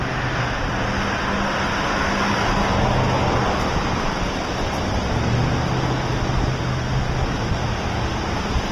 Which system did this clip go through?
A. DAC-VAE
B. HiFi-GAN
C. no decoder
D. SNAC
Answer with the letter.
C